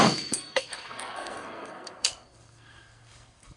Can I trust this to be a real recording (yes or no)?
no